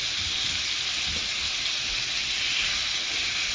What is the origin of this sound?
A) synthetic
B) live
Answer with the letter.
B